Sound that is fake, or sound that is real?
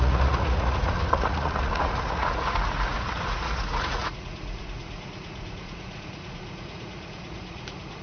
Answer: fake